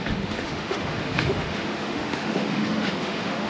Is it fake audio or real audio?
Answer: fake